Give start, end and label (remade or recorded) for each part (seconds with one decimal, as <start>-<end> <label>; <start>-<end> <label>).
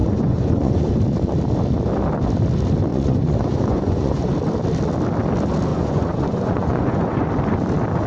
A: 0.0-0.9 remade; 0.9-2.9 recorded; 2.9-4.3 remade; 4.3-5.7 recorded; 5.7-7.3 remade; 7.3-8.1 recorded